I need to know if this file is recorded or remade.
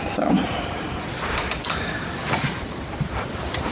remade